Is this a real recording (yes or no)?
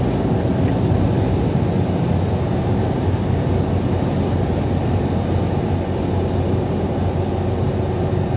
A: yes